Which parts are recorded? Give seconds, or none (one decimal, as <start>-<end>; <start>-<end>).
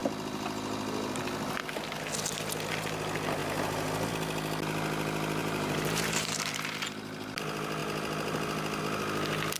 0.0-5.4; 6.5-9.6